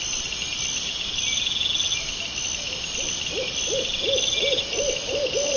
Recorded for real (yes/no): yes